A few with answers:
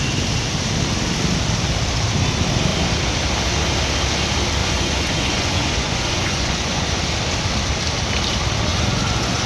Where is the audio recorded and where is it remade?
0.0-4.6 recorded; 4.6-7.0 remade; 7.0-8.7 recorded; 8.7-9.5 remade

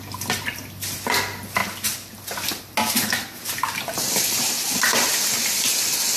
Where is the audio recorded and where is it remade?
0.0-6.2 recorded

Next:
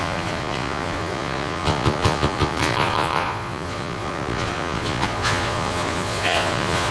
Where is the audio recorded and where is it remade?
0.0-6.9 remade

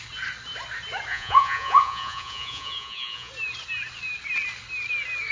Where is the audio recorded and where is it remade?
0.0-1.1 recorded; 1.1-3.3 remade; 3.3-5.3 recorded